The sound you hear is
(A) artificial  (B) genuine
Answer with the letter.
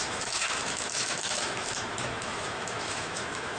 A